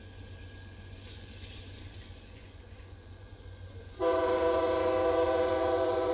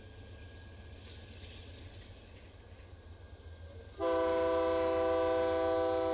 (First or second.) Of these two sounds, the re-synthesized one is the first